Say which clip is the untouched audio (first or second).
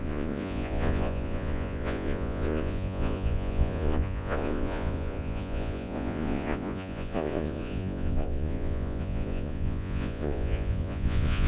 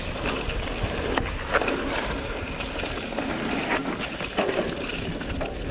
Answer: second